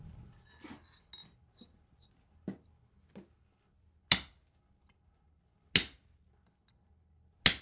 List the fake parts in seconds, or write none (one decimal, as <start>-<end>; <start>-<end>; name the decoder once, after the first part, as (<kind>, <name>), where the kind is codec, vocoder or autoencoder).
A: none